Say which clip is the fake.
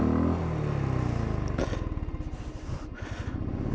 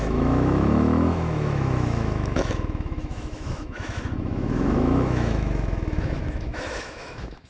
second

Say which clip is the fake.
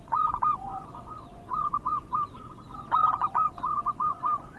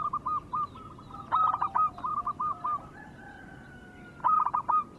first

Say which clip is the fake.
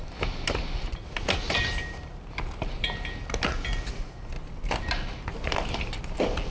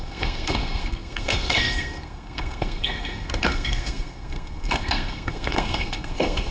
second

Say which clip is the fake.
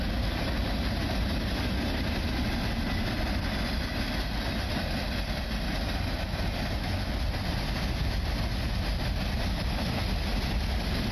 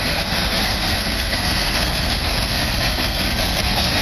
second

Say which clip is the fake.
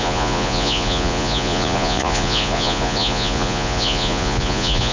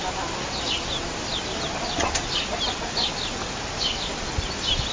first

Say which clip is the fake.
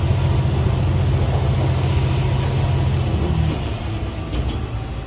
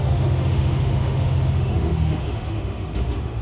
second